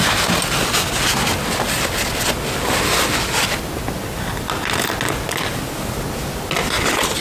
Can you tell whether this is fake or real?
real